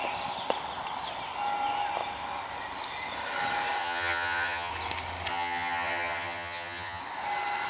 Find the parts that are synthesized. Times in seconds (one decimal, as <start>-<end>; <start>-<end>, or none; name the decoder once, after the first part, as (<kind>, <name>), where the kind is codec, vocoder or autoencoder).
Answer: 3.8-4.7 (vocoder, HiFi-GAN); 5.3-7.0